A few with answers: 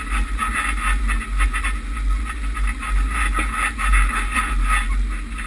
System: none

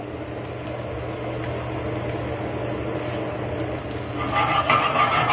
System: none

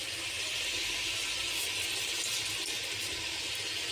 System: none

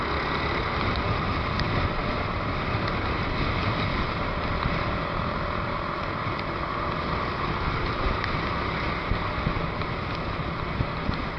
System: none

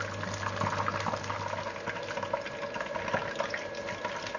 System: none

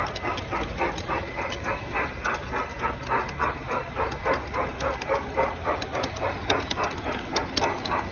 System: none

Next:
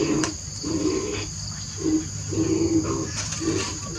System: none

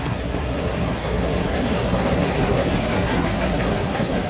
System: codec, SNAC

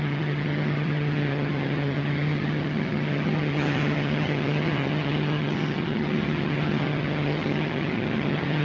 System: vocoder, HiFi-GAN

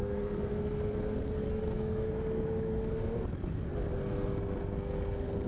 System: codec, SNAC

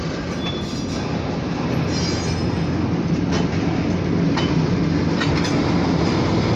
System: none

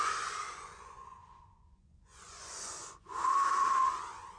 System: vocoder, Vocos